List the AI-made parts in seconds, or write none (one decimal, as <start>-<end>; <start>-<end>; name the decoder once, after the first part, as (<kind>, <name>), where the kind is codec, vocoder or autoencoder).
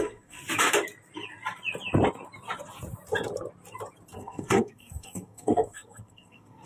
0.0-0.4 (codec, SNAC); 4.2-6.7